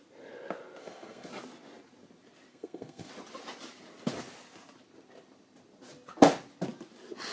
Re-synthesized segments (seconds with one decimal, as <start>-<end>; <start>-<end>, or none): 0.8-1.3; 2.5-3.1